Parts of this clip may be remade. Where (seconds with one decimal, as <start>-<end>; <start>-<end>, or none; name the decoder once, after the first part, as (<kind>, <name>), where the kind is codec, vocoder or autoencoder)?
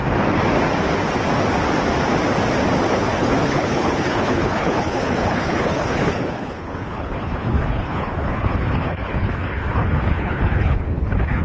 2.9-11.4 (codec, HILCodec)